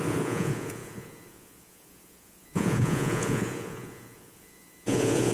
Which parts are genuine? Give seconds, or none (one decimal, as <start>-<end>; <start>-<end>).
none